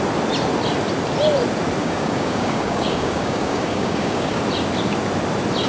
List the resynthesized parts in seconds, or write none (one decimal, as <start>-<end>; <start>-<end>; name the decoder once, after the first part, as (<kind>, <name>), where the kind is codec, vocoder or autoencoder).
1.8-4.4 (codec, DAC)